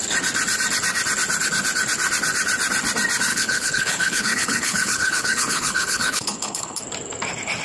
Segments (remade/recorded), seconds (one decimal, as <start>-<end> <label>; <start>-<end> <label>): 0.0-3.3 recorded; 3.3-6.8 remade; 6.8-7.6 recorded